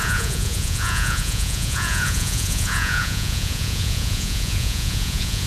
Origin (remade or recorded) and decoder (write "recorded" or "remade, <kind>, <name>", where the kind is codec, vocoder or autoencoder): remade, vocoder, Vocos